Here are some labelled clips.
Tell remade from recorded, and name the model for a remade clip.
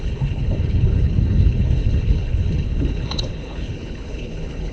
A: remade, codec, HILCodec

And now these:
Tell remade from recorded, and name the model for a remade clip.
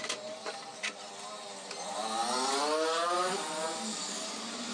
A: recorded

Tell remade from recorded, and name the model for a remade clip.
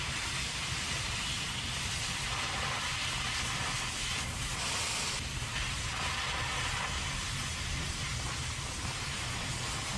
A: recorded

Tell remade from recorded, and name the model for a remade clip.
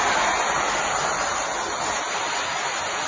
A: recorded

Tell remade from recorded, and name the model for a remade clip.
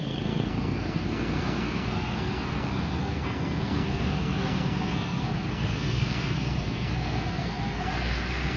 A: remade, codec, SNAC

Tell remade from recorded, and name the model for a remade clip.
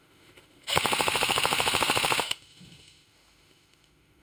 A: remade, autoencoder, DAC-VAE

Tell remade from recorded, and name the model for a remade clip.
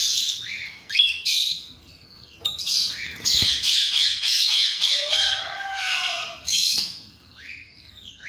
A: remade, codec, SNAC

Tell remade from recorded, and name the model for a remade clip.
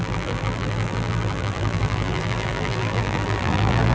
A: remade, vocoder, BigVGAN v2